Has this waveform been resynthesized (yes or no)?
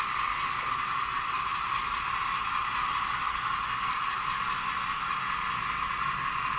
no